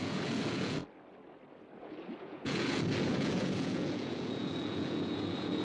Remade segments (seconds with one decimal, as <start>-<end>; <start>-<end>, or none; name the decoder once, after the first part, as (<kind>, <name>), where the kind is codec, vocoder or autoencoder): 0.0-0.8 (vocoder, Vocos); 1.8-5.6